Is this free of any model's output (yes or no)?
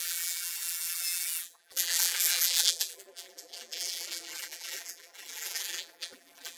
no